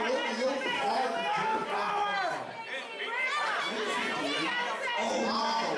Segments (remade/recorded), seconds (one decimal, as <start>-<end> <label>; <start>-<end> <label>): 0.0-5.8 recorded